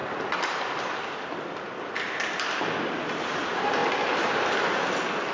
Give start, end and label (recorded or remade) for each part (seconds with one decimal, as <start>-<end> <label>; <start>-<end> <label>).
0.0-5.3 recorded